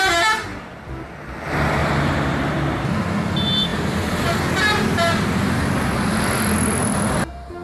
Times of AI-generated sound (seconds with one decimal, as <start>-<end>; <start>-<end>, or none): 0.5-1.1; 1.8-2.8; 3.7-4.3